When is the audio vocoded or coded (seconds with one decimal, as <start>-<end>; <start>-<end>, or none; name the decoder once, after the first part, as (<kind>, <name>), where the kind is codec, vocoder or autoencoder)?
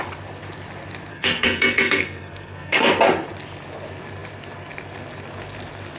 1.1-3.0 (codec, SNAC)